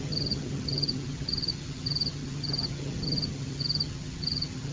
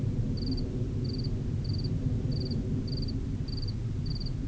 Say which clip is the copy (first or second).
first